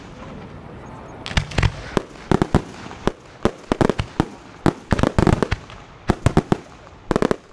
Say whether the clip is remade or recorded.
recorded